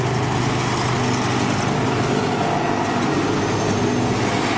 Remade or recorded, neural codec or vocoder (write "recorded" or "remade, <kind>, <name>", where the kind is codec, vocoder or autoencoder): recorded